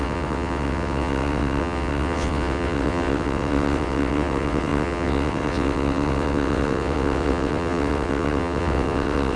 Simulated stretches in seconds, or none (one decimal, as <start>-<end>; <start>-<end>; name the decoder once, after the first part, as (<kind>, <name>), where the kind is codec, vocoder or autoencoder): 0.0-9.4 (vocoder, WaveNeXt)